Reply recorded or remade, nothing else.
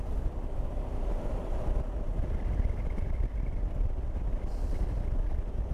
recorded